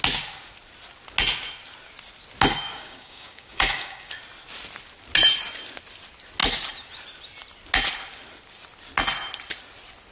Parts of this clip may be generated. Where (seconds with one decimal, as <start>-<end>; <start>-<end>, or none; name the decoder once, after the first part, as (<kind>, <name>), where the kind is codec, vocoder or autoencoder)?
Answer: 2.7-4.1 (codec, DAC)